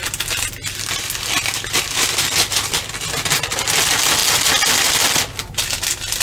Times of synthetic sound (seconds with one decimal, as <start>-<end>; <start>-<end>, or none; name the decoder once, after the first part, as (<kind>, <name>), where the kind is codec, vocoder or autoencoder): none